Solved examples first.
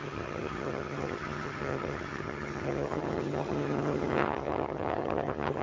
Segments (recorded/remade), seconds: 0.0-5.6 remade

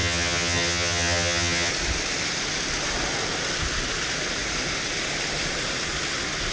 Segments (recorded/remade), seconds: 0.0-1.7 remade; 1.7-6.5 recorded

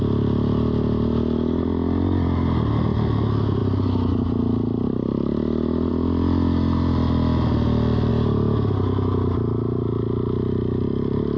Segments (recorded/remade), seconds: 0.0-11.4 recorded

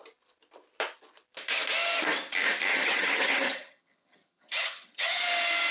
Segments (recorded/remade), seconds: 0.0-2.7 recorded; 2.7-5.2 remade; 5.2-5.7 recorded

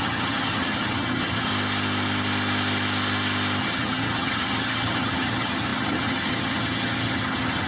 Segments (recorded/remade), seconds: 0.0-1.5 remade; 1.5-3.6 recorded; 3.6-7.7 remade

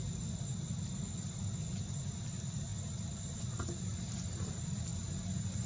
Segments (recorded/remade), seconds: 0.0-5.7 recorded

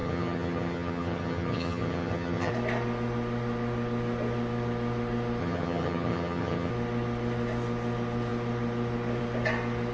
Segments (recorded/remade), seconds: 0.0-2.5 remade; 2.5-5.4 recorded; 5.4-6.7 remade; 6.7-9.9 recorded